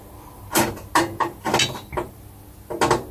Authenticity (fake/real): real